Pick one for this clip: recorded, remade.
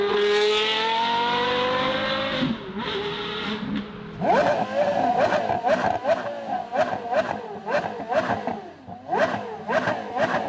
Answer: recorded